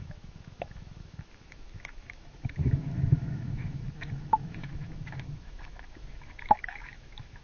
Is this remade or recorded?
remade